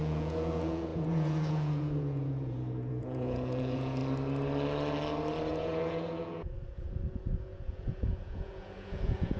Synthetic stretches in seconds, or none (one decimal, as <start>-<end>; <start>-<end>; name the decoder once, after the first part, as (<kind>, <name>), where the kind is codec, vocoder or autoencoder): 0.0-4.0 (vocoder, Vocos); 5.5-9.4